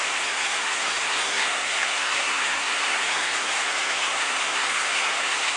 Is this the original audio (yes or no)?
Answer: no